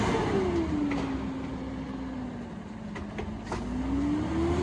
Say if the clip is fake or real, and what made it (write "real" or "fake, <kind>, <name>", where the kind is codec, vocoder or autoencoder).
real